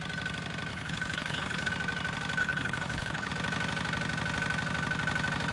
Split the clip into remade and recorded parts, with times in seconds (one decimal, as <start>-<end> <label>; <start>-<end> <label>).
0.0-0.7 recorded; 0.7-1.7 remade; 1.7-2.4 recorded; 2.4-3.3 remade; 3.3-5.5 recorded